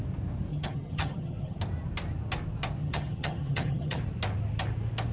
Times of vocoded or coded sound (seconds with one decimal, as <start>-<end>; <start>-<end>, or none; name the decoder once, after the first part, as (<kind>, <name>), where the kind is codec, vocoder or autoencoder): 0.5-1.6 (vocoder, HiFi-GAN); 2.8-4.0